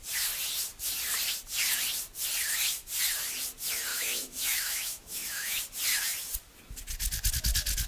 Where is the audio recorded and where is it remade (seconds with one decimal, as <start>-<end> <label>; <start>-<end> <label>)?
0.0-3.9 recorded; 3.9-5.6 remade; 5.6-7.9 recorded